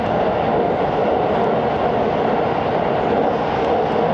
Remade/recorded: recorded